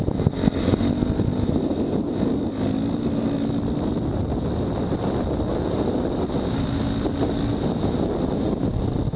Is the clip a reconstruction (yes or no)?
no